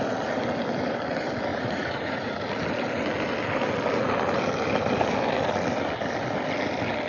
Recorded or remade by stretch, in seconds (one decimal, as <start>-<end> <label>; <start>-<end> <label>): 0.0-1.5 recorded; 1.5-2.3 remade; 2.3-7.1 recorded